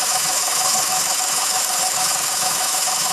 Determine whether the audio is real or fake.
fake